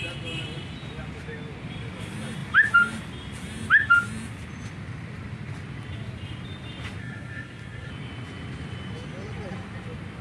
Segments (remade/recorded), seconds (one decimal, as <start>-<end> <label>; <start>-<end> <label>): 0.0-7.0 recorded; 7.0-7.9 remade; 7.9-10.2 recorded